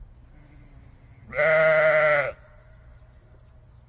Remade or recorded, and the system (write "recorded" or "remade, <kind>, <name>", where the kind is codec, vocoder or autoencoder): recorded